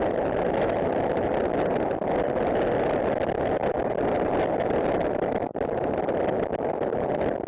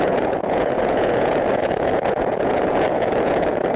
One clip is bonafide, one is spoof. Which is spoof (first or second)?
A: second